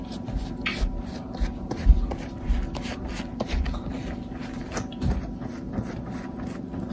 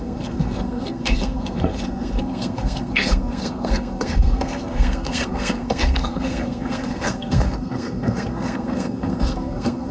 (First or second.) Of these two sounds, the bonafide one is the first